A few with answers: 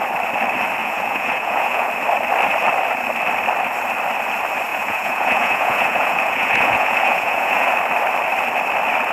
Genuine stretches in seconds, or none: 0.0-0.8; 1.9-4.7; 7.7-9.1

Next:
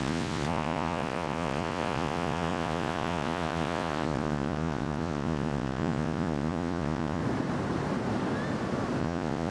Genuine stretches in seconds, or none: 7.2-9.0

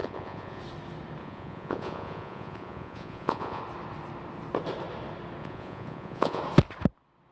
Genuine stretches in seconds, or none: 0.6-1.2; 3.6-5.4; 6.4-7.3